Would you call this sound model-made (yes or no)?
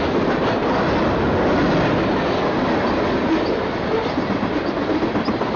no